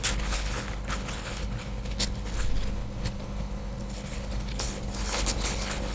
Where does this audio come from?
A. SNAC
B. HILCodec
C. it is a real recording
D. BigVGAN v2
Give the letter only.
B